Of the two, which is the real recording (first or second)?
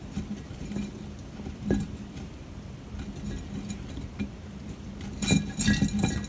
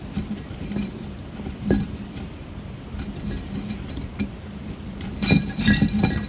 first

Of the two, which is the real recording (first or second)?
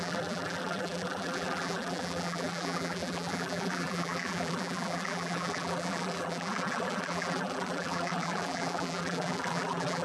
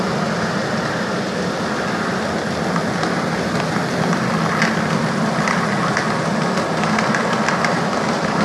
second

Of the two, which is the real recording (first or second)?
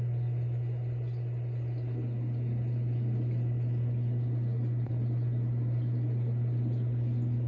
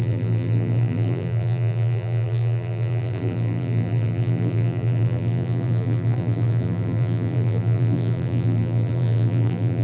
first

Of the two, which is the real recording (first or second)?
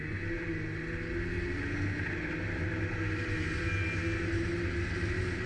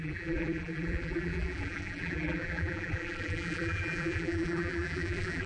first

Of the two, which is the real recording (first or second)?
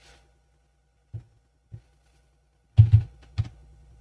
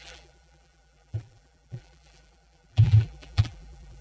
first